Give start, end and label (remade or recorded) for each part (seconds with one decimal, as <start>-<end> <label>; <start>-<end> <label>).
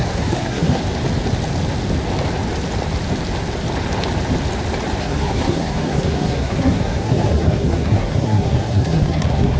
0.0-0.8 remade; 0.8-5.0 recorded; 5.0-9.6 remade